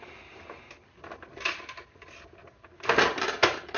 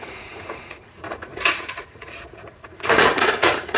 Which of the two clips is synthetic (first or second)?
second